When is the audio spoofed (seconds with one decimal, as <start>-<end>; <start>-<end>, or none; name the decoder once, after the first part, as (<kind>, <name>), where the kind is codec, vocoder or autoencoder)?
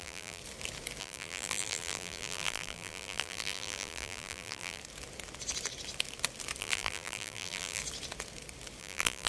0.0-0.4 (vocoder, BigVGAN v2); 1.0-4.8; 6.6-7.8; 8.8-9.3